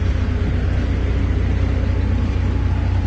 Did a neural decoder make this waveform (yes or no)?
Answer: no